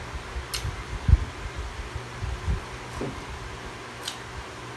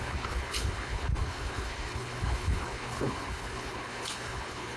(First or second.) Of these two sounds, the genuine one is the first